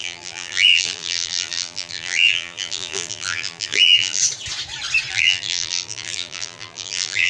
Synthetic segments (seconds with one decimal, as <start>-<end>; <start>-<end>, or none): 0.0-4.2; 5.1-7.3